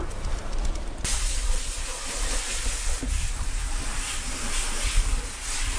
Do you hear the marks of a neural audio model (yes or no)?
no